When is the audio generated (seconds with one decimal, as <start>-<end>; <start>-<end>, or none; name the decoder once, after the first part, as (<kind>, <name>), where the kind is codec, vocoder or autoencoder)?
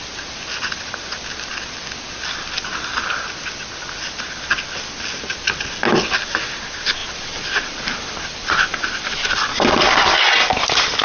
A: 7.0-10.2 (vocoder, BigVGAN v2)